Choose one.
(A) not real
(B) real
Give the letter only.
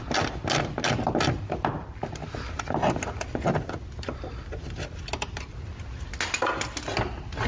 B